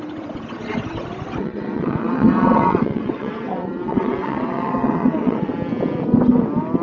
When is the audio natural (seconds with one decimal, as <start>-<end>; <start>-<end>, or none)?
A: 0.0-1.4; 5.5-6.8